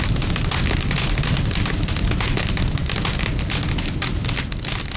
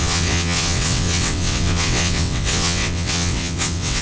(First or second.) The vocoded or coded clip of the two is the second